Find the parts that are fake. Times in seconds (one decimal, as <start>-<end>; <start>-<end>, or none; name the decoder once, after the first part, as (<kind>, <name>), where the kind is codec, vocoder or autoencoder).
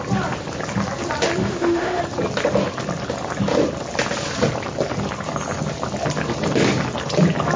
1.4-2.0 (autoencoder, DAC-VAE)